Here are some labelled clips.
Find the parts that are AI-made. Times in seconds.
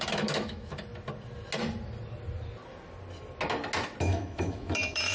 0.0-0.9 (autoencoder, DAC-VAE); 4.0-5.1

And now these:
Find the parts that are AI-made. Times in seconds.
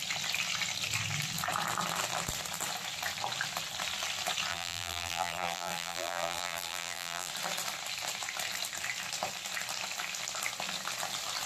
4.5-7.3 (vocoder, BigVGAN v2)